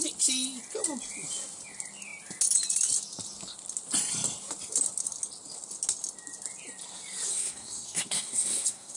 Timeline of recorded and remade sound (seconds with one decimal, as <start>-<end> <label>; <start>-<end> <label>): 0.0-7.3 recorded; 7.3-9.0 remade

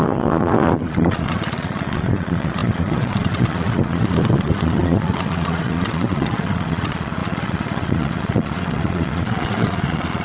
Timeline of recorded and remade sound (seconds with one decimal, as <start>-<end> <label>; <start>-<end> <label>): 0.0-10.2 remade